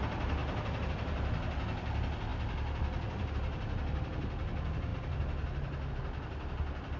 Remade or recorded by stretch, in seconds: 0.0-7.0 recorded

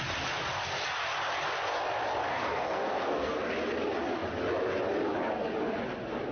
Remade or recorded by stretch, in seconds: 0.0-2.3 recorded; 2.3-3.4 remade; 3.4-6.3 recorded

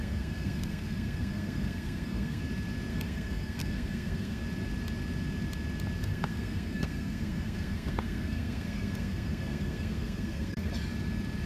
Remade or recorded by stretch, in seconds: 0.0-2.4 remade; 2.4-2.9 recorded; 2.9-4.4 remade; 4.4-6.0 recorded; 6.0-10.7 remade; 10.7-11.5 recorded

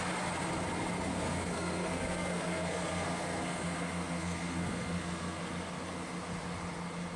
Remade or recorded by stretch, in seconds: 0.0-1.1 recorded; 1.1-5.4 remade; 5.4-7.2 recorded

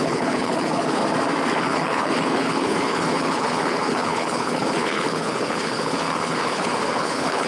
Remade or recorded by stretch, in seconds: 0.0-1.0 remade; 1.0-1.6 recorded; 1.6-7.5 remade